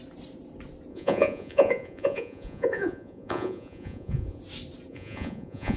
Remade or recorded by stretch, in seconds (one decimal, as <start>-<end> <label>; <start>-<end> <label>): 0.0-0.9 recorded; 0.9-4.4 remade; 4.4-4.9 recorded; 4.9-5.8 remade